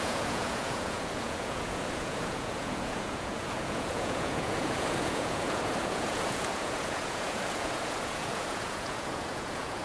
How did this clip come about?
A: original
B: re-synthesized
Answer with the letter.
B